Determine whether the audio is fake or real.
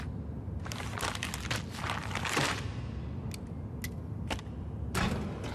real